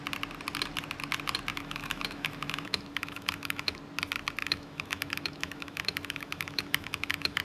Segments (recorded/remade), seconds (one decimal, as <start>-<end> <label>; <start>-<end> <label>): 0.0-1.5 recorded; 1.5-3.8 remade; 3.8-4.4 recorded; 4.4-7.4 remade